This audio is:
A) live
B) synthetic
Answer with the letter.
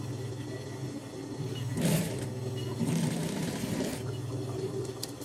A